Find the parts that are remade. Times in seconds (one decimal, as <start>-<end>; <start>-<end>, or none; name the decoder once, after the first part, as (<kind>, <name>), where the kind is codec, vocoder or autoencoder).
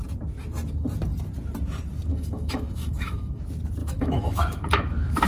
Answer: 2.1-3.4 (autoencoder, DAC-VAE); 3.8-5.3